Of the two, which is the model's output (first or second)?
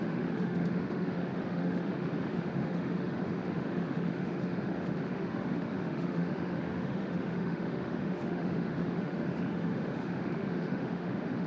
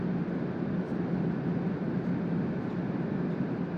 first